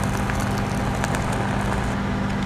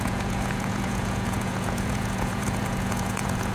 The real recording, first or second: first